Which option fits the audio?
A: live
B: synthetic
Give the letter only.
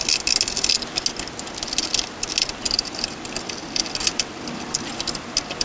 A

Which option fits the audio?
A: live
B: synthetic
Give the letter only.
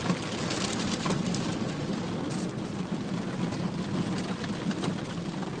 A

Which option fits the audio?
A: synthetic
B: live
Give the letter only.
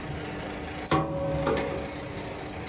B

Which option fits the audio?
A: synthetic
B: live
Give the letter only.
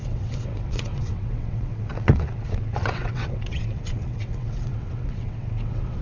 A